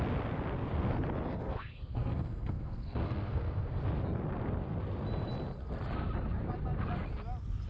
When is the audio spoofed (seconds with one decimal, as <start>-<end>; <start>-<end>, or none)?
1.3-3.8